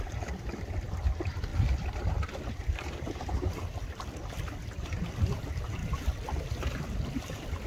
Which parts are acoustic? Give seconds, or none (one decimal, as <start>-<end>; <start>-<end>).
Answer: none